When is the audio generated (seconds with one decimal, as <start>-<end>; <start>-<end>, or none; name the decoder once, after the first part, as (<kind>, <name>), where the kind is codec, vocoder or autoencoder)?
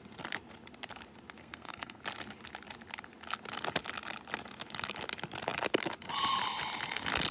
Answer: 1.4-2.0 (codec, SNAC)